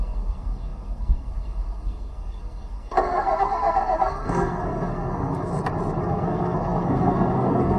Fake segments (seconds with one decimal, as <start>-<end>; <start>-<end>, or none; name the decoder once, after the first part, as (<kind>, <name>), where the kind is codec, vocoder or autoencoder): 0.0-5.5 (codec, SNAC); 6.0-7.8